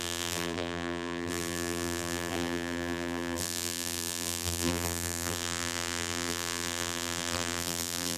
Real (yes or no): no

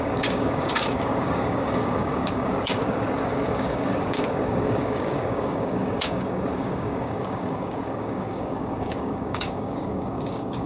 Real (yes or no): no